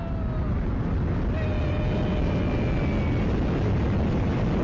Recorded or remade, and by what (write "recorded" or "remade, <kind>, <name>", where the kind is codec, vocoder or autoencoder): recorded